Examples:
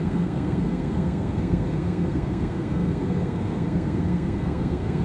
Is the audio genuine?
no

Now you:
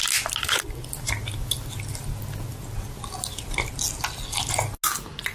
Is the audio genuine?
yes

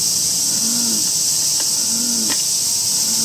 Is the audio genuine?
yes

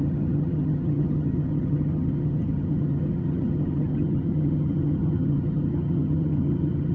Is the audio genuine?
no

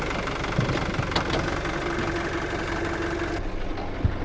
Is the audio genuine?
yes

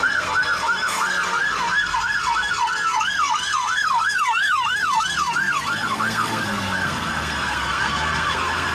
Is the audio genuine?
no